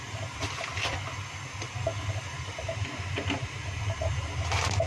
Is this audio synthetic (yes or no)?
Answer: no